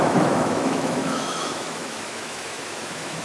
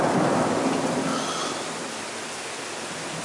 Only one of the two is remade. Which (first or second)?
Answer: first